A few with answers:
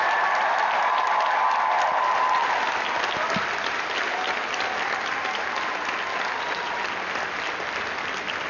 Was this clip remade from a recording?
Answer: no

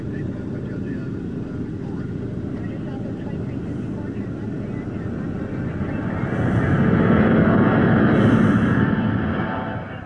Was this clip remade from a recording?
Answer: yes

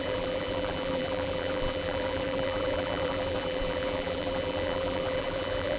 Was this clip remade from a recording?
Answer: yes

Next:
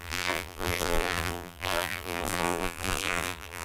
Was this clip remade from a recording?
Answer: yes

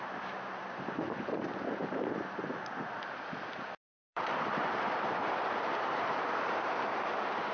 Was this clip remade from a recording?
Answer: yes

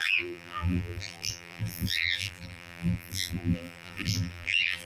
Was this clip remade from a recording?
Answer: yes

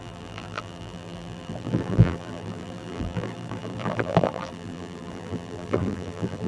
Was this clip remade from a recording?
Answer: yes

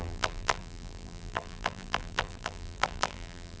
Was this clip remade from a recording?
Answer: yes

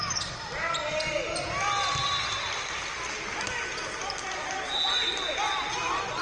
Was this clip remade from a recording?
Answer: no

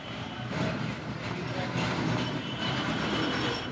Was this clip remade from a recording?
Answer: yes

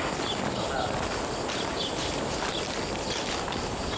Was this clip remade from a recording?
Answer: no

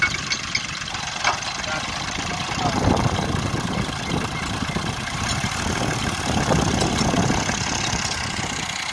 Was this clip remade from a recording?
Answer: no